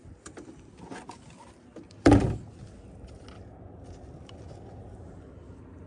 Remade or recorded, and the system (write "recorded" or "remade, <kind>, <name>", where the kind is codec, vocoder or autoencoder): recorded